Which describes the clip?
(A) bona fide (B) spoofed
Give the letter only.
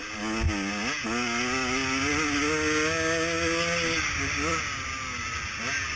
A